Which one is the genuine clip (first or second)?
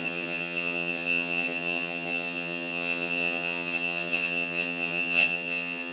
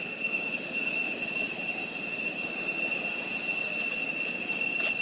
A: second